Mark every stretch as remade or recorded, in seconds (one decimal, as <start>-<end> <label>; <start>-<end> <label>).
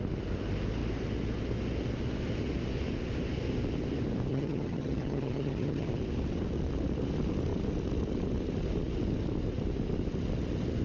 0.0-4.3 recorded; 4.3-5.9 remade; 5.9-10.8 recorded